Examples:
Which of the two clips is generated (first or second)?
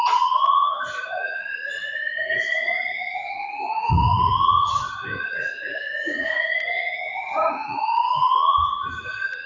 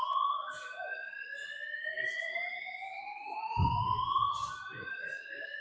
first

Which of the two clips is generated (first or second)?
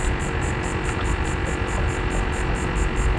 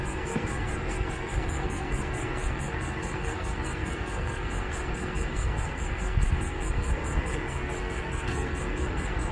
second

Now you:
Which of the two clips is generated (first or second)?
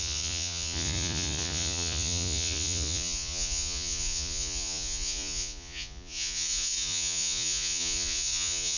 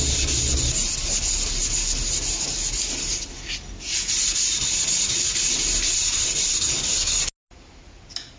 first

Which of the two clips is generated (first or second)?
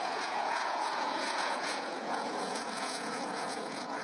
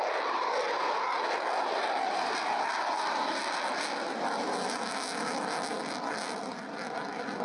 first